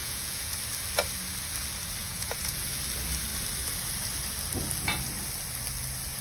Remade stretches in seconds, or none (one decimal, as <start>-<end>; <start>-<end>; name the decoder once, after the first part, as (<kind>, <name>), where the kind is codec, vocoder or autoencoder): 0.0-0.6 (vocoder, Vocos); 2.0-2.8